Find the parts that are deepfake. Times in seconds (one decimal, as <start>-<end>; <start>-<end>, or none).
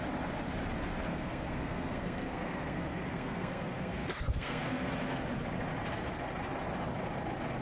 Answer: 1.1-4.9